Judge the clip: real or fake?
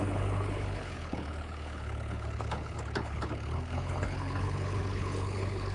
fake